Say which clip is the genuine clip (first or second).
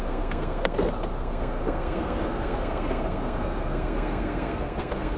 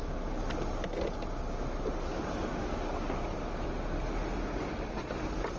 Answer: second